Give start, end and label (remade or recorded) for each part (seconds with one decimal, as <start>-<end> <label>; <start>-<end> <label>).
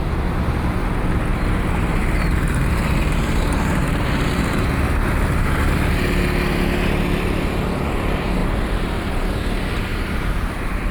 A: 0.0-1.3 recorded; 1.3-4.7 remade; 4.7-9.9 recorded; 9.9-10.9 remade